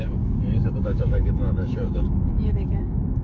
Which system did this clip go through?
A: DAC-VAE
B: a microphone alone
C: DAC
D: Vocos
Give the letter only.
C